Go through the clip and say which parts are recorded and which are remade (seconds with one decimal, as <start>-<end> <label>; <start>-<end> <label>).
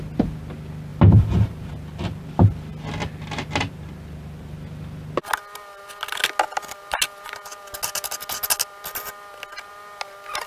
0.0-0.9 recorded; 0.9-1.7 remade; 1.7-10.5 recorded